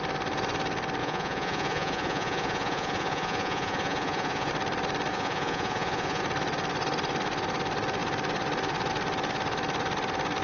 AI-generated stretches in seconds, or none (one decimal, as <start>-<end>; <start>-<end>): 1.0-4.5; 5.1-6.2

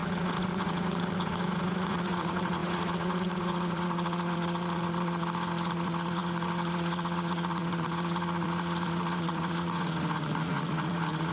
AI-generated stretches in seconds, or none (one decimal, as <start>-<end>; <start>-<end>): 0.0-11.3

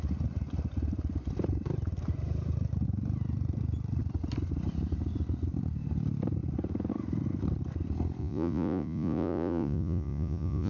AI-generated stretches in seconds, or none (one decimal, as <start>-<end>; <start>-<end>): 8.2-10.7

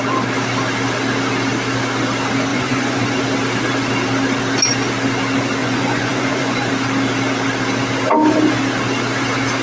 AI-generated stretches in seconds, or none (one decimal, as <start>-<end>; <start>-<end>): 2.5-3.2; 5.6-6.7

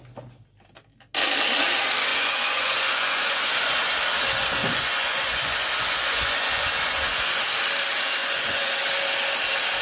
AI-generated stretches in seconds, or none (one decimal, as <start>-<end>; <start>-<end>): 2.1-3.8; 4.6-7.4; 8.2-8.7

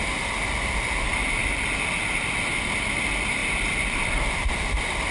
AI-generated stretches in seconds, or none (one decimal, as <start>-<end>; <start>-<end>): none

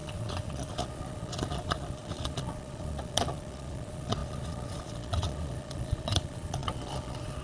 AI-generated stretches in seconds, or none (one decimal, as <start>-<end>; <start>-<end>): 0.0-7.4

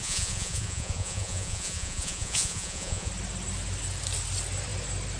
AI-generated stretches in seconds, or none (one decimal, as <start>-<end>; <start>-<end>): 0.0-3.1